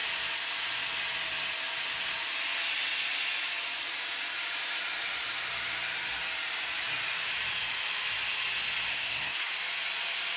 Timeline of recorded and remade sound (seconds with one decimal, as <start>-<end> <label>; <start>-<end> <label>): 0.0-8.9 recorded; 8.9-9.5 remade; 9.5-10.4 recorded